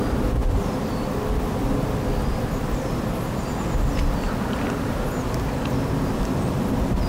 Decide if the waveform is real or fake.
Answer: real